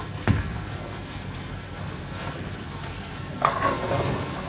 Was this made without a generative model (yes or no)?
no